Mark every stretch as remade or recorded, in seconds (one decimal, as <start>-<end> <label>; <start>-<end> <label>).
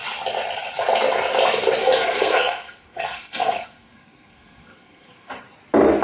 0.0-1.8 recorded; 1.8-5.3 remade; 5.3-6.0 recorded